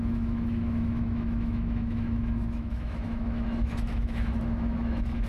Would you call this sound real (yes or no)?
no